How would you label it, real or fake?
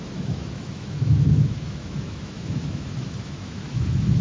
fake